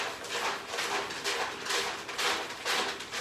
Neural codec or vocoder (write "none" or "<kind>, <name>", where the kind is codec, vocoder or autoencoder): none